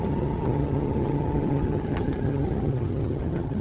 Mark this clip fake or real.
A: fake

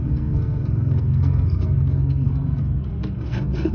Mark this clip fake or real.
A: fake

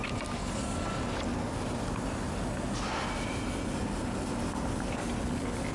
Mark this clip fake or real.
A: real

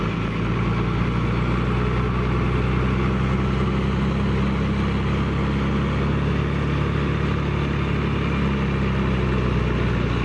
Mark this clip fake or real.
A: real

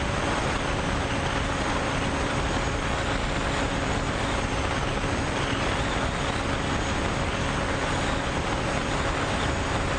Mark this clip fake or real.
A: real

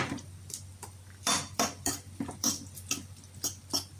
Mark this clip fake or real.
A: fake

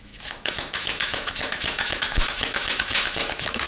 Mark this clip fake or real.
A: fake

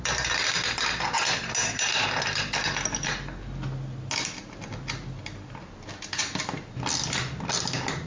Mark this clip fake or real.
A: real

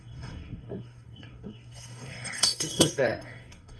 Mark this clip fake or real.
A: fake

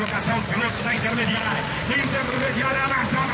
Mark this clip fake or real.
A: fake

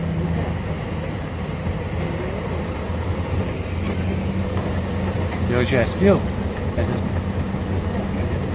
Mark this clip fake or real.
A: real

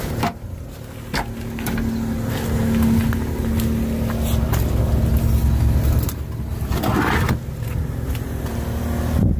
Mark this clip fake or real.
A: real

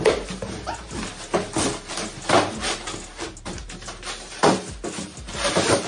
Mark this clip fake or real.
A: real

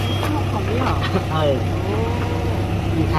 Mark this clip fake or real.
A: real